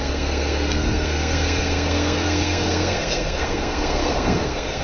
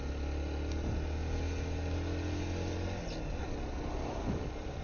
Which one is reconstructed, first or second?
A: first